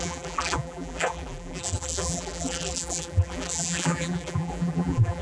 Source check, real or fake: fake